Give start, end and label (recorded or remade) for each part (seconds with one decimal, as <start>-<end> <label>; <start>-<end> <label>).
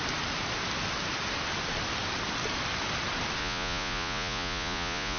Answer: 0.0-3.4 recorded; 3.4-5.2 remade